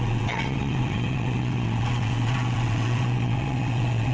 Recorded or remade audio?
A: remade